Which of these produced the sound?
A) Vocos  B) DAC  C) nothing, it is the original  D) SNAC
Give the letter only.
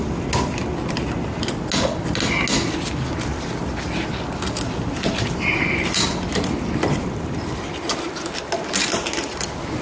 C